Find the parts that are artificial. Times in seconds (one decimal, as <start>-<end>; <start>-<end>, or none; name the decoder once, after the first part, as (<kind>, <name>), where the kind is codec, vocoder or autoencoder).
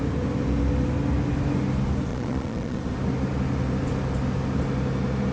2.1-2.8 (vocoder, Vocos)